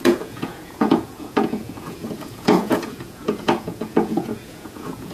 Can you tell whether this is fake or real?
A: fake